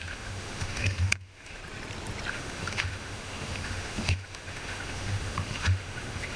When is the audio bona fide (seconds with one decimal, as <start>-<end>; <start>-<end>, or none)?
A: 1.6-2.3